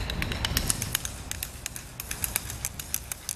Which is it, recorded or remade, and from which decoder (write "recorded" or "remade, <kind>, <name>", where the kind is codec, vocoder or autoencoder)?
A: recorded